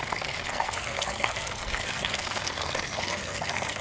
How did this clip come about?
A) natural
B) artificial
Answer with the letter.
B